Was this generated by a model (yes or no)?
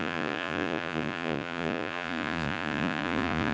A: yes